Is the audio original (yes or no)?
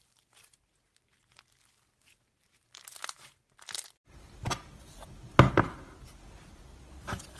yes